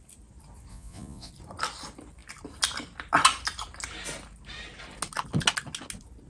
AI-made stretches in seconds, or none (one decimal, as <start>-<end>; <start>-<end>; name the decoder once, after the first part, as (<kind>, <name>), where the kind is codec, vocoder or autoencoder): 0.7-1.3 (vocoder, Vocos)